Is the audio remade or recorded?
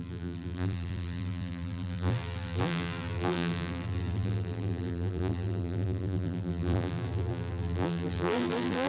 remade